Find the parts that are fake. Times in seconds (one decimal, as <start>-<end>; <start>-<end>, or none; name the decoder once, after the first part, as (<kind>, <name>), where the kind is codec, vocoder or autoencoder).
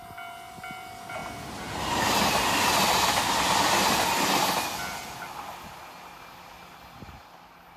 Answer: none